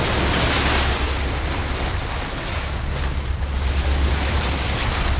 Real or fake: real